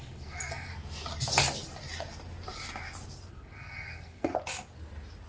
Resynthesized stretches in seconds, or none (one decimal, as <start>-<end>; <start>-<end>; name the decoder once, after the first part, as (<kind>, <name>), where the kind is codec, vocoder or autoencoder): 0.0-0.7 (codec, SNAC); 3.3-4.3